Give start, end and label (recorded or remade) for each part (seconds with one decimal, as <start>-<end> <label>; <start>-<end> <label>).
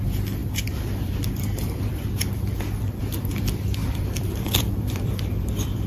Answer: 0.0-0.4 recorded; 0.4-3.0 remade; 3.0-3.8 recorded; 3.8-5.2 remade; 5.2-5.9 recorded